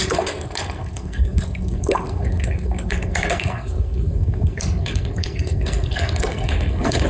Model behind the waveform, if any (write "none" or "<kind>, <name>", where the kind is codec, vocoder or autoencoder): codec, SNAC